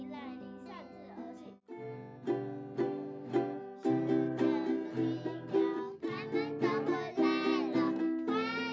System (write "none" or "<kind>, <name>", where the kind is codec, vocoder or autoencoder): none